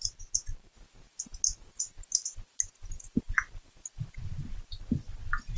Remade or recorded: recorded